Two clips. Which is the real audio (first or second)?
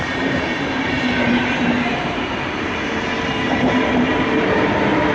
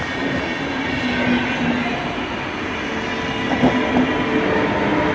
second